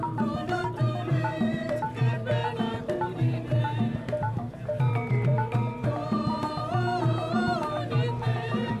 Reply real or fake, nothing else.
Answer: fake